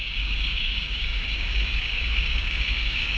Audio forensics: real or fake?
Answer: fake